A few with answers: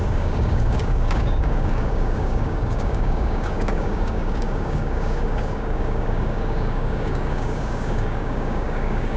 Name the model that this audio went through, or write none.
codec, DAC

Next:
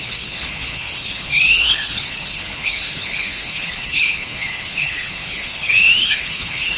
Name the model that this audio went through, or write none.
codec, HILCodec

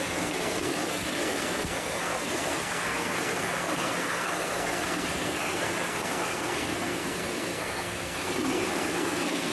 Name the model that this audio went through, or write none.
codec, SNAC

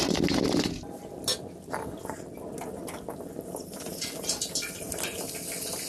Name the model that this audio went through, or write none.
none